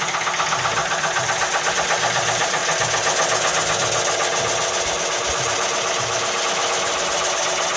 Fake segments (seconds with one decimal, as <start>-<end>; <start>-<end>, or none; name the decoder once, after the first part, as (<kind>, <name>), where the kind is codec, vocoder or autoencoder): none